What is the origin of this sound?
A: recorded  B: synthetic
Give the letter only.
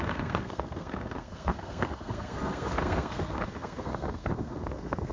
B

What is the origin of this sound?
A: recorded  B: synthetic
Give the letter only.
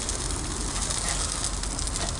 A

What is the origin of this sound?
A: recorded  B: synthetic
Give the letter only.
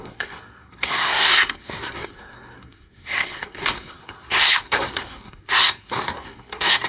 B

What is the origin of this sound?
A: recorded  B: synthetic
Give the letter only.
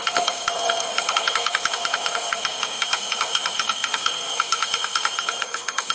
B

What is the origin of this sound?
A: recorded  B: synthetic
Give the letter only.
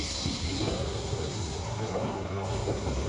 B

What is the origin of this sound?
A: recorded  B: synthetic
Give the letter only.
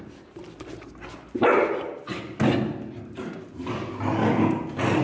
A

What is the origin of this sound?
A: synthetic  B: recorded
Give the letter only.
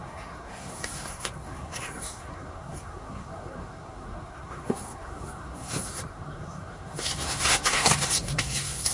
A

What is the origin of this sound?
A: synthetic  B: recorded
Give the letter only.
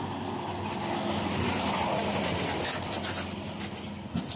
B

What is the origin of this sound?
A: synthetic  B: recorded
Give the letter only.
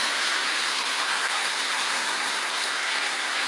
A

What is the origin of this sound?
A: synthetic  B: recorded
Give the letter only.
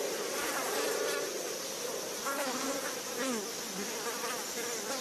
B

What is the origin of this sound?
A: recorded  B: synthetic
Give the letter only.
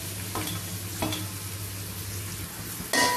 A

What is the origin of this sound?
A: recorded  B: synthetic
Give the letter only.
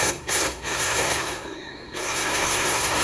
B